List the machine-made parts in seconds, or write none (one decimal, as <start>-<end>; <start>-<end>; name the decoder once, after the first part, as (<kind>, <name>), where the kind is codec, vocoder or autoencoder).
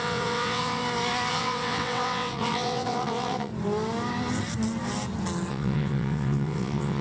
0.0-0.8 (vocoder, WaveNeXt); 1.3-3.5; 5.5-7.0